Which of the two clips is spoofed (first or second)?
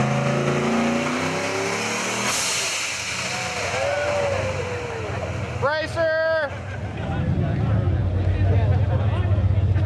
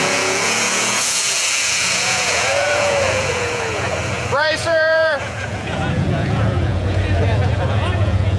second